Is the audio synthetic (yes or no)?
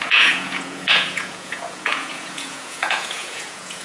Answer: yes